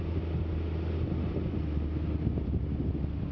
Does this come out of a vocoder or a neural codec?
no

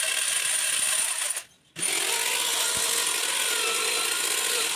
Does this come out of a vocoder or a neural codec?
no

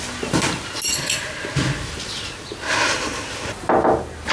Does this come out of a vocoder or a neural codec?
no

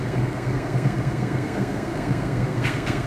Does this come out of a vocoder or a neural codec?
yes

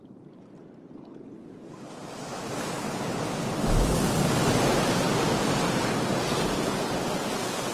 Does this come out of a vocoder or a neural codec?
no